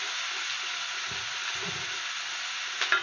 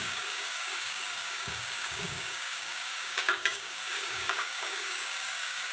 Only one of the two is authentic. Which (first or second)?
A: first